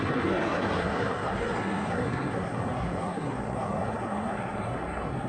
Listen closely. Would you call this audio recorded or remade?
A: remade